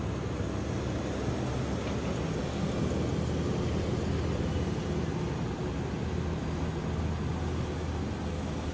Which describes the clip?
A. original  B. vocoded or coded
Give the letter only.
A